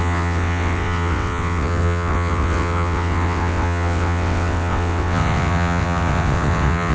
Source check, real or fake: fake